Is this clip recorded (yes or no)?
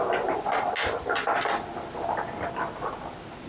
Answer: yes